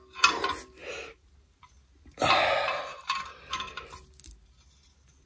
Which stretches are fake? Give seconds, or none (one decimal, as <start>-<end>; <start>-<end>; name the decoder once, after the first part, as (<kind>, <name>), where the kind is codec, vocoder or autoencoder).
0.8-1.7 (vocoder, BigVGAN v2); 2.9-4.0